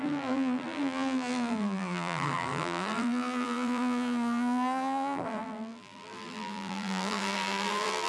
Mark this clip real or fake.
fake